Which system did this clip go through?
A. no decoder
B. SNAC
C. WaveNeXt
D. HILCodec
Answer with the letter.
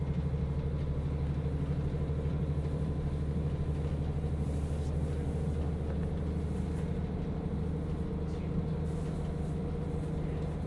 A